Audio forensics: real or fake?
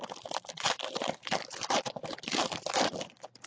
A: fake